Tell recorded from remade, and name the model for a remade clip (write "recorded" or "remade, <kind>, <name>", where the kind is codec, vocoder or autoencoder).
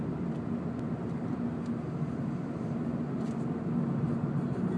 recorded